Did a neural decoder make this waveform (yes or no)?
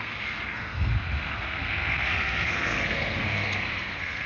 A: yes